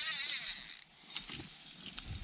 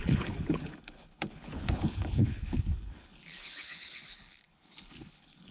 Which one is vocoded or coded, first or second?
second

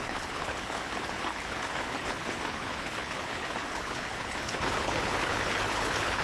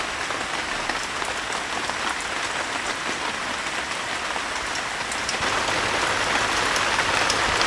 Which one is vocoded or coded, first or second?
first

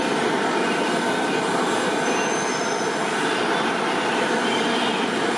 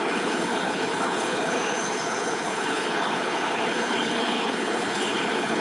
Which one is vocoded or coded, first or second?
second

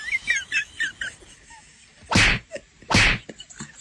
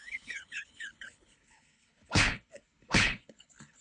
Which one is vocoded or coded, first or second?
second